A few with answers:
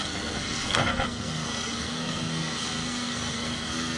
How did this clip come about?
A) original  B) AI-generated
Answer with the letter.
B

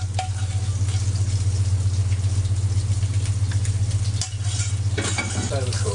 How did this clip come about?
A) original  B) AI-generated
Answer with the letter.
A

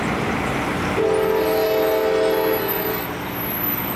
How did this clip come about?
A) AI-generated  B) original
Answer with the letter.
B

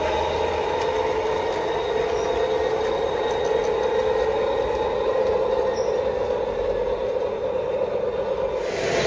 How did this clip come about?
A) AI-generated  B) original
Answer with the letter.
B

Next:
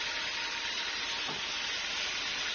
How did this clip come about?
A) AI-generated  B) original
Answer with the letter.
B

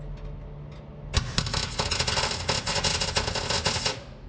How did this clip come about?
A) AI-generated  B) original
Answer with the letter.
B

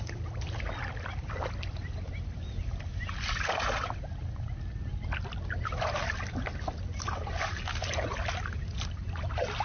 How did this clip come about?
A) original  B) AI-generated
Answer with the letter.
A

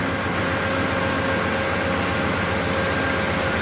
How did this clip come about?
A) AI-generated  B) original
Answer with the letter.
B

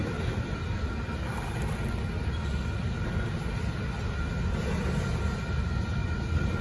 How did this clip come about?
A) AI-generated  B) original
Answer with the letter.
B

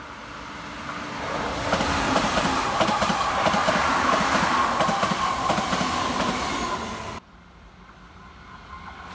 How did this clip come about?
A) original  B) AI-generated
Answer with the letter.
A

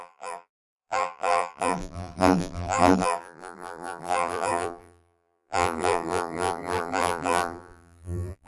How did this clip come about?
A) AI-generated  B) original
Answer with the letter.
A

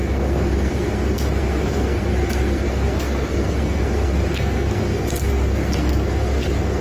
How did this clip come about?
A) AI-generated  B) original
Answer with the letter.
A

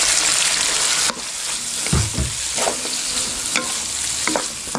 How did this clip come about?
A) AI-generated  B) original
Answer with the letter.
B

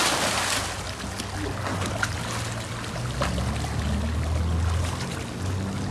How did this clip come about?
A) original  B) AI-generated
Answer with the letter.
A